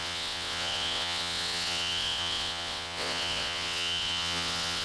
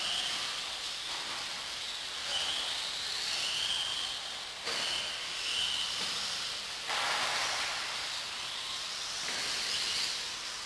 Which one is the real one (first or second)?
second